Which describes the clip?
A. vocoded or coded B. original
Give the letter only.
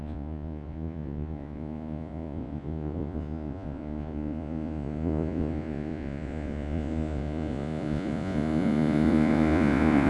A